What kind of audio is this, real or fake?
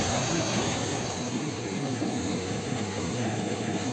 fake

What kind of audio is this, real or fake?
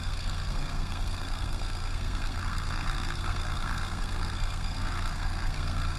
fake